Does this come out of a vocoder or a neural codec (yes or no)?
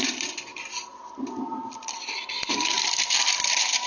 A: no